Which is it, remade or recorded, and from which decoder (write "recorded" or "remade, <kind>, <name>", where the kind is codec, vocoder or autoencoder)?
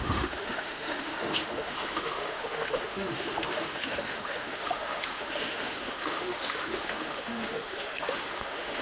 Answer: remade, autoencoder, DAC-VAE